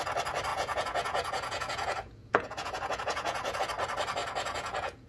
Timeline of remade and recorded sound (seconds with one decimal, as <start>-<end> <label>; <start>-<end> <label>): 0.0-0.5 recorded; 0.5-3.6 remade; 3.6-4.2 recorded; 4.2-5.1 remade